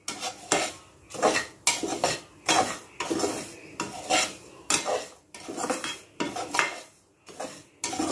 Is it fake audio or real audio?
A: real